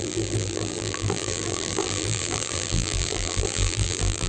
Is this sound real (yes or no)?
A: no